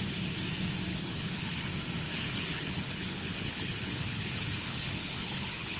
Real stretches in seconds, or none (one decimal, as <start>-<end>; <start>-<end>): 0.0-0.9; 1.7-2.1